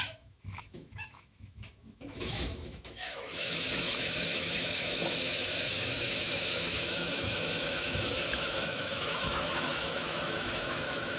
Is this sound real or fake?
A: fake